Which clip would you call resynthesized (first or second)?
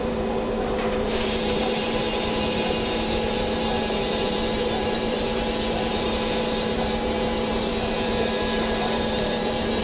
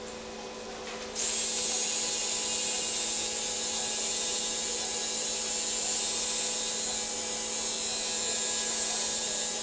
first